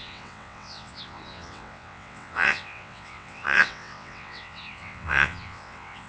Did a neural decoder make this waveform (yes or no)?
yes